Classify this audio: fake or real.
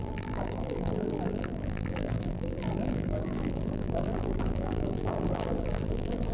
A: fake